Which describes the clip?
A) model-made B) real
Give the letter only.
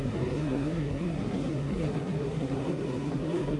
A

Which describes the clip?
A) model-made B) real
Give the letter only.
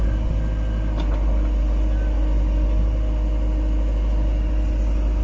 B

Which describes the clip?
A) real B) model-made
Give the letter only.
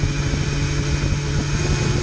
A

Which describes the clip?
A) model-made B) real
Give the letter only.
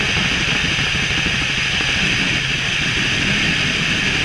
B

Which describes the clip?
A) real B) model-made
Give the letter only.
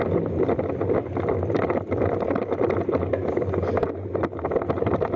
B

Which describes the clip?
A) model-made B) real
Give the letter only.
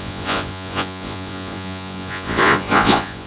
A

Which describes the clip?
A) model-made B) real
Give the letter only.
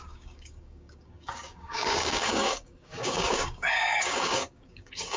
A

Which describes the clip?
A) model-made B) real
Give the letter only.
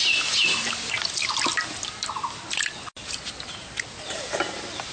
B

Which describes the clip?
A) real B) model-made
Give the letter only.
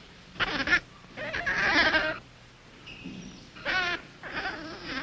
B